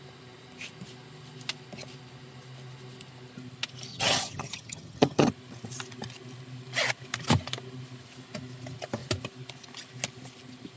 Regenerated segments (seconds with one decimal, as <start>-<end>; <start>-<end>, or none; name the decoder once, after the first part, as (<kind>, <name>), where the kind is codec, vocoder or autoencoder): 3.9-5.3 (vocoder, HiFi-GAN)